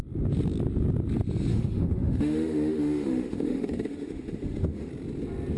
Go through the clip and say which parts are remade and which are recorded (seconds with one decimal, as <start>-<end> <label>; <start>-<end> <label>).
0.0-1.5 recorded; 1.5-4.9 remade; 4.9-5.6 recorded